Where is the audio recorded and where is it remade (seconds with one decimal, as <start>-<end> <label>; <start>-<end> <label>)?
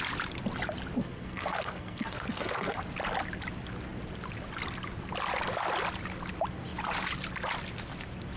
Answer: 0.0-1.0 recorded; 1.0-2.7 remade; 2.7-8.4 recorded